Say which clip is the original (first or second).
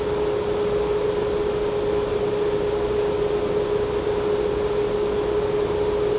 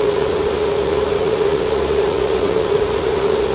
first